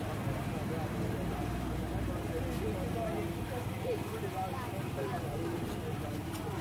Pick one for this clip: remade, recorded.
recorded